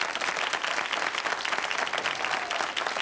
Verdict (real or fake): real